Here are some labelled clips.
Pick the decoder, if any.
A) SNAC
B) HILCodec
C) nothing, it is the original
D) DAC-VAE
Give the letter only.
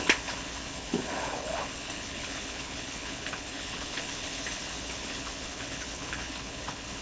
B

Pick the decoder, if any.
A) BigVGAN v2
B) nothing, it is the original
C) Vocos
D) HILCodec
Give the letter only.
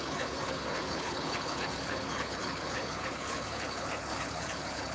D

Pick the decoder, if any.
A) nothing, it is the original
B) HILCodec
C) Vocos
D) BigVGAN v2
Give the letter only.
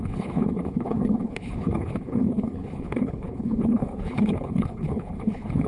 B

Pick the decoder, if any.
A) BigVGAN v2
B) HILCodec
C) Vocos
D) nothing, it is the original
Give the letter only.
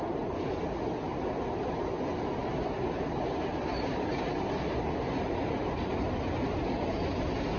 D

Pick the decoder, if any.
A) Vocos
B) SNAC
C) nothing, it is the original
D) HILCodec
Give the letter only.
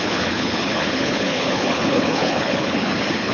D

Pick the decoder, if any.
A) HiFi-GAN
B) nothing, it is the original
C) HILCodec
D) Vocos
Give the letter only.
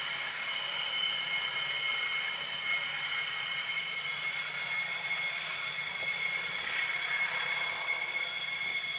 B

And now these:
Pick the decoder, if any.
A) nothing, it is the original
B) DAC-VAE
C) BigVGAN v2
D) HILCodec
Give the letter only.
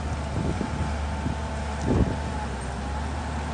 A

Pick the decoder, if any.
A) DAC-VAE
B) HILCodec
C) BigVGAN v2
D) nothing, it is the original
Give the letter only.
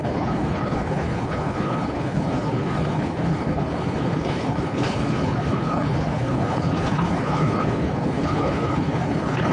B